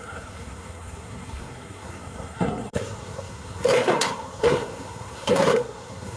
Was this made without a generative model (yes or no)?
no